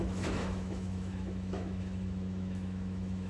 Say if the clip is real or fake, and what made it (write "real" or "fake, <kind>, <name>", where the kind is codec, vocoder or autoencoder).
fake, autoencoder, DAC-VAE